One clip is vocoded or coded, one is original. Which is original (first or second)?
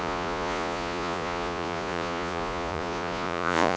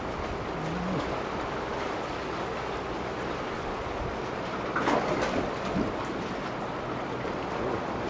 second